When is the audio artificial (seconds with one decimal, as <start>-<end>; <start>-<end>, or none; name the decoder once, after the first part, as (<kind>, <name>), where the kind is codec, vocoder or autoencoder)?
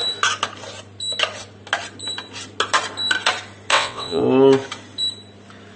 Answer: 3.7-4.2 (vocoder, WaveNeXt)